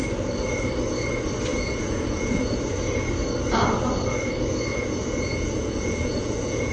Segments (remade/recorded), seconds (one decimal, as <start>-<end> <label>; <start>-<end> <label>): 0.0-1.5 recorded; 1.5-2.6 remade; 2.6-4.7 recorded; 4.7-6.7 remade